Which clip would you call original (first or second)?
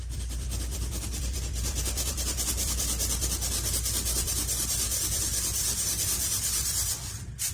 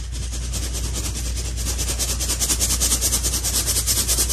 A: second